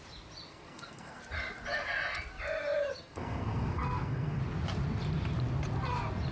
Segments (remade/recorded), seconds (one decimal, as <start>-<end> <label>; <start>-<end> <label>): 0.0-0.5 recorded; 0.5-1.2 remade; 1.2-3.0 recorded; 3.0-4.4 remade; 4.4-6.3 recorded